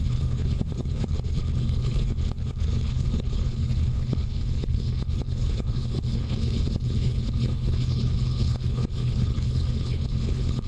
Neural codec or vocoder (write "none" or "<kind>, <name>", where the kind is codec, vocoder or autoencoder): codec, HILCodec